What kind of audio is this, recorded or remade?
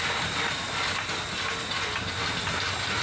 recorded